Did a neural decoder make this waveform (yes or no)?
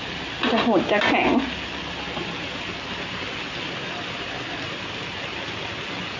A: no